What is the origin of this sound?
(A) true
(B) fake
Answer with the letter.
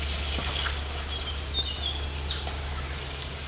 A